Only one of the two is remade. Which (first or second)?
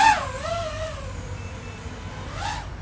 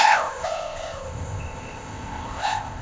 second